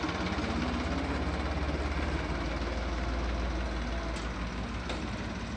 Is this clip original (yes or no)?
yes